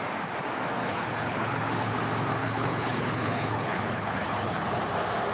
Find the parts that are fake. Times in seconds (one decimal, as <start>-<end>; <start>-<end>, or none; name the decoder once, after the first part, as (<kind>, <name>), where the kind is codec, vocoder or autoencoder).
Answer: 0.8-2.0 (codec, HILCodec); 2.4-4.8